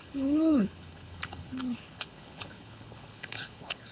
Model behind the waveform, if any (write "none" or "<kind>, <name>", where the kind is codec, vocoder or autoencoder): codec, HILCodec